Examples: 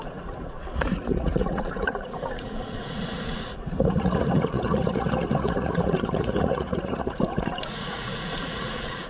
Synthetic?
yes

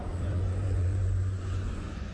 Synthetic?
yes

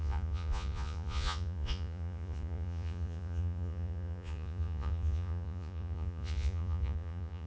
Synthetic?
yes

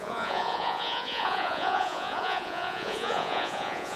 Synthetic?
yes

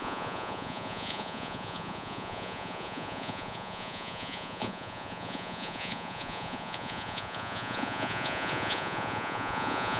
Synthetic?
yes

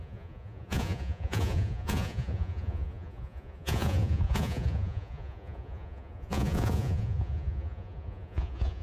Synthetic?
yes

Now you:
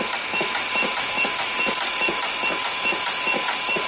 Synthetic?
no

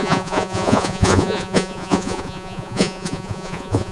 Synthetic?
yes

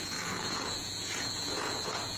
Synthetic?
yes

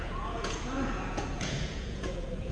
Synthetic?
yes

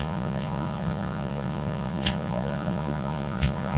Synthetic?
yes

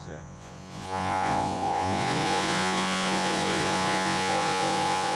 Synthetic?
yes